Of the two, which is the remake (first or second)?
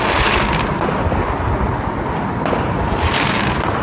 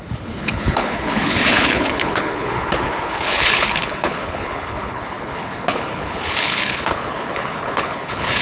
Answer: second